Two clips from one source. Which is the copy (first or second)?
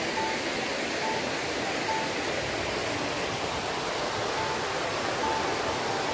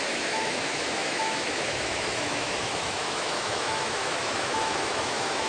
second